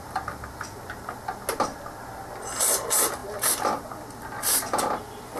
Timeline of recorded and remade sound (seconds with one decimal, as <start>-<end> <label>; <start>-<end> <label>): 0.0-5.4 recorded